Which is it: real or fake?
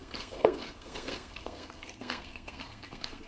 fake